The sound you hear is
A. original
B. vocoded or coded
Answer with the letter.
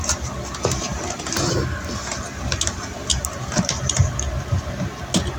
A